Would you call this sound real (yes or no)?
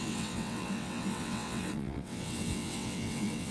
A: no